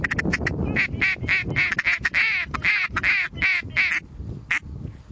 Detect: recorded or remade recorded